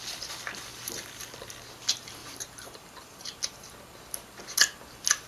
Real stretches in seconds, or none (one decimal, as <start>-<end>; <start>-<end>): 0.0-2.2; 3.4-5.3